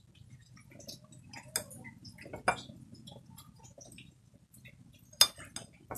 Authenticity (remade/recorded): recorded